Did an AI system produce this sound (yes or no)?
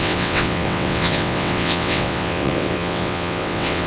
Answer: yes